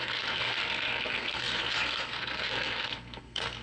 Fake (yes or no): yes